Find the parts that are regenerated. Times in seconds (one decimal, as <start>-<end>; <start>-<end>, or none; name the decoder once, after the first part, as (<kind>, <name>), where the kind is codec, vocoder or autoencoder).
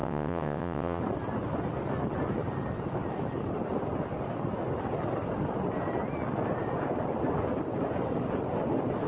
0.0-1.0 (vocoder, WaveNeXt)